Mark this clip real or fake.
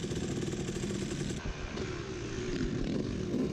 fake